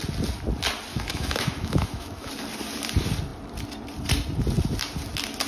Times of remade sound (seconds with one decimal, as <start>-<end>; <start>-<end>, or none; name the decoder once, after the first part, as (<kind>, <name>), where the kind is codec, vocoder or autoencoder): 0.9-2.3 (autoencoder, DAC-VAE)